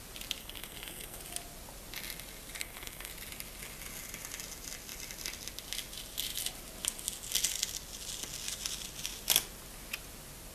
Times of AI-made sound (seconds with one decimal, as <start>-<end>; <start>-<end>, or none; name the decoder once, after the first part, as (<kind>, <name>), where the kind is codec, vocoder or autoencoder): 0.4-1.2 (codec, SNAC); 2.6-3.1